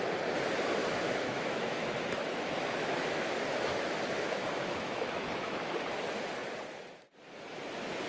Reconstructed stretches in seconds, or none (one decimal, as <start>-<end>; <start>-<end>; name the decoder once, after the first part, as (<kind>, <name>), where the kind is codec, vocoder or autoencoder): 0.8-5.7 (autoencoder, DAC-VAE)